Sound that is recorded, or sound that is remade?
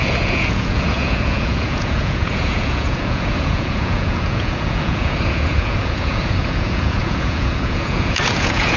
remade